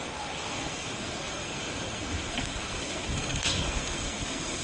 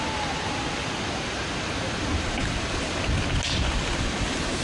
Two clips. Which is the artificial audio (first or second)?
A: first